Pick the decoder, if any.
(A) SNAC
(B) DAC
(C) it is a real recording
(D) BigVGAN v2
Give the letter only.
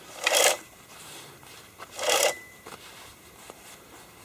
D